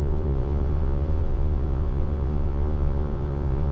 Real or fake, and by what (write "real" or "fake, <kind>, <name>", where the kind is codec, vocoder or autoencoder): fake, vocoder, Vocos